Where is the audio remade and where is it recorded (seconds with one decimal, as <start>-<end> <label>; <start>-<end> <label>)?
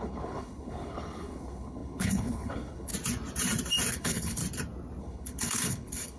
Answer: 0.0-2.9 remade; 2.9-3.9 recorded; 3.9-4.4 remade; 4.4-5.0 recorded; 5.0-6.2 remade